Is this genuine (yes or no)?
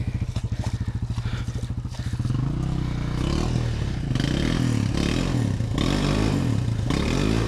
yes